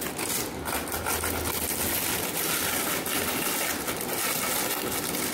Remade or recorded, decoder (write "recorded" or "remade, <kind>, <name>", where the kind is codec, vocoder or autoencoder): recorded